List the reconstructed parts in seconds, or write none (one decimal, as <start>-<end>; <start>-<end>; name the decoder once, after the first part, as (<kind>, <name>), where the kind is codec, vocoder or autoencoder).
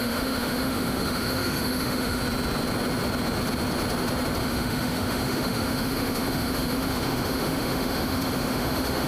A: 0.0-2.2 (autoencoder, DAC-VAE); 4.4-9.1